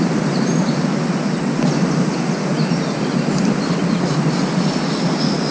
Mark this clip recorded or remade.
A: recorded